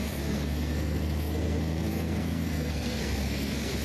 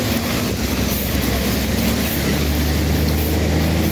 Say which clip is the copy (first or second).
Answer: first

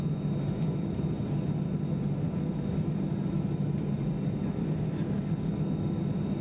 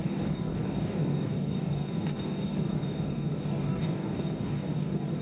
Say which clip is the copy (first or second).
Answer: second